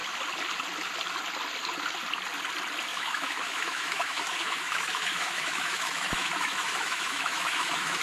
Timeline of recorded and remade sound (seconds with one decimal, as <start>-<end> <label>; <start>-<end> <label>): 0.0-2.9 recorded; 2.9-8.0 remade